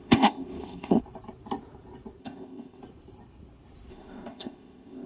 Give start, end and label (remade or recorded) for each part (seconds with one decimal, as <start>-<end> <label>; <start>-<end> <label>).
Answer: 0.0-1.0 remade; 1.0-2.2 recorded; 2.2-2.8 remade; 2.8-3.9 recorded; 3.9-5.1 remade